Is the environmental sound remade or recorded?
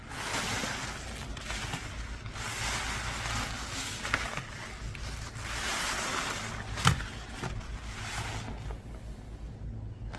recorded